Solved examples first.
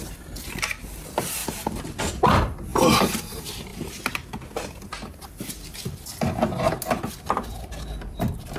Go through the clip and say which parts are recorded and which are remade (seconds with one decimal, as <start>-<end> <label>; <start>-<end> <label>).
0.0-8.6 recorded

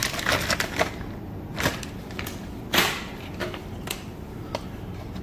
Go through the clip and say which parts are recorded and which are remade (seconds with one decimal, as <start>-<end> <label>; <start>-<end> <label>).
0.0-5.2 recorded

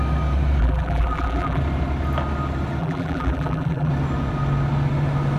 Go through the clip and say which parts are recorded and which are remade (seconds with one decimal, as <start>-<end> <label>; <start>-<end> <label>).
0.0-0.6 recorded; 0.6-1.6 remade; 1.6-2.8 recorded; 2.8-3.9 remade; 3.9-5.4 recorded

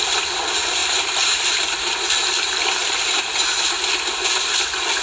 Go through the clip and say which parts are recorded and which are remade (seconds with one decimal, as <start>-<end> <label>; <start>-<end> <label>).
0.0-0.8 recorded; 0.8-1.5 remade; 1.5-2.8 recorded; 2.8-3.8 remade; 3.8-5.0 recorded

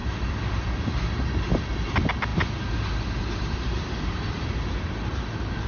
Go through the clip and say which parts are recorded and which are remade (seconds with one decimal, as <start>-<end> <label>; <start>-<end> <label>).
0.0-0.6 remade; 0.6-2.3 recorded; 2.3-5.7 remade

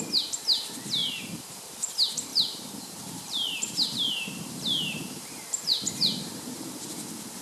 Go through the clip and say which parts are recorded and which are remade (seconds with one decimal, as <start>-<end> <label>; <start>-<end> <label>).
0.0-1.0 recorded; 1.0-1.7 remade; 1.7-2.3 recorded; 2.3-6.7 remade; 6.7-7.4 recorded

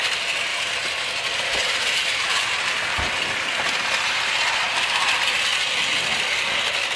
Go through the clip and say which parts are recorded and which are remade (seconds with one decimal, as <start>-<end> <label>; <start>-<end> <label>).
0.0-0.5 recorded; 0.5-1.2 remade; 1.2-1.6 recorded; 1.6-5.1 remade; 5.1-7.0 recorded

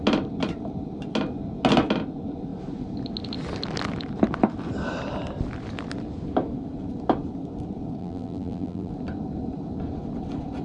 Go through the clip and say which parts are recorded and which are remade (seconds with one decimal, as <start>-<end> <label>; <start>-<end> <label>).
0.0-8.0 recorded; 8.0-8.9 remade; 8.9-10.6 recorded